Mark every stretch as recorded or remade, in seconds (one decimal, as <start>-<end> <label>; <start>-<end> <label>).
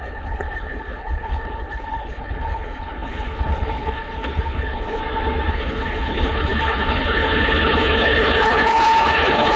0.0-5.0 remade; 5.0-5.5 recorded; 5.5-9.6 remade